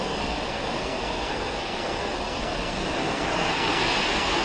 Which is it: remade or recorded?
remade